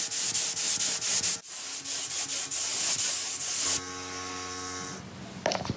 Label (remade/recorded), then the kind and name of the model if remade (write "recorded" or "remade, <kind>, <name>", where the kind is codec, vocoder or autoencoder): recorded